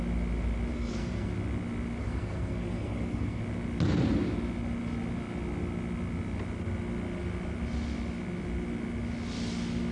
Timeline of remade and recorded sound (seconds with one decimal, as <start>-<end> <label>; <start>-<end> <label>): 0.0-0.7 recorded; 0.7-1.3 remade; 1.3-2.0 recorded; 2.0-3.4 remade; 3.4-9.9 recorded

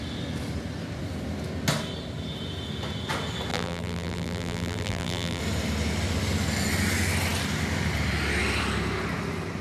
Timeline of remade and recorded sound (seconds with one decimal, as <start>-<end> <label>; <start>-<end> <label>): 0.0-3.5 recorded; 3.5-5.4 remade; 5.4-9.6 recorded

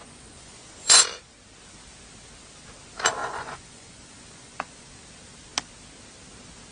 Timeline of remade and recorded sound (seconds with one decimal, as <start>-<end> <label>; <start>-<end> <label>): 0.0-1.0 remade; 1.0-3.2 recorded; 3.2-4.9 remade; 4.9-6.7 recorded

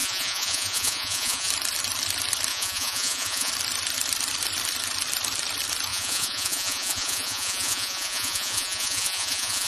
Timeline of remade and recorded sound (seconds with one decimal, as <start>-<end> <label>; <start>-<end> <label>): 0.0-1.5 remade; 1.5-2.5 recorded; 2.5-3.5 remade; 3.5-5.9 recorded; 5.9-9.7 remade

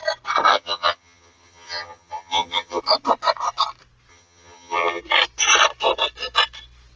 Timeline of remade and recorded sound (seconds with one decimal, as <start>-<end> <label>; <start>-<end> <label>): 0.0-0.5 recorded; 0.5-2.8 remade; 2.8-4.1 recorded; 4.1-5.0 remade; 5.0-7.0 recorded